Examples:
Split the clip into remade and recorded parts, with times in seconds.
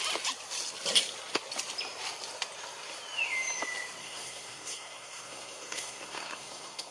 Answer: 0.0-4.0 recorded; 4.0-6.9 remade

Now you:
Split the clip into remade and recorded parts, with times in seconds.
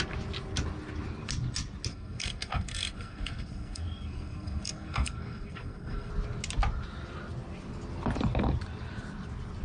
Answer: 0.0-1.9 recorded; 1.9-6.1 remade; 6.1-9.6 recorded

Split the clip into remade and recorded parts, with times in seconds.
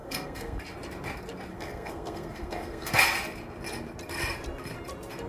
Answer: 0.0-0.6 remade; 0.6-1.5 recorded; 1.5-2.9 remade; 2.9-5.3 recorded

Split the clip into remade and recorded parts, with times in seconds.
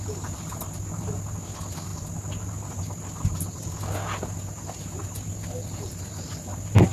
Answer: 0.0-6.9 recorded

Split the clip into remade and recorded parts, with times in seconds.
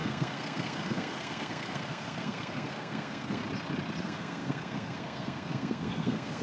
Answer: 0.0-3.4 remade; 3.4-4.0 recorded; 4.0-6.4 remade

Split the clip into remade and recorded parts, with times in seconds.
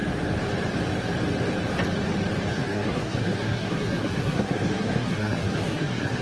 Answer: 0.0-2.5 recorded; 2.5-6.2 remade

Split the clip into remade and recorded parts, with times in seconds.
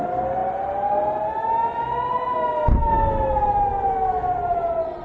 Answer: 0.0-5.0 recorded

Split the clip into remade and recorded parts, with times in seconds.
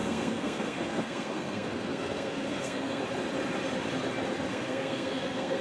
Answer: 0.0-3.0 remade; 3.0-4.5 recorded; 4.5-5.6 remade